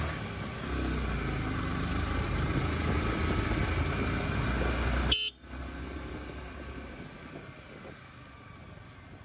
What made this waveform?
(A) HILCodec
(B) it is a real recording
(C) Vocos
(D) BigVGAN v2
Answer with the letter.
B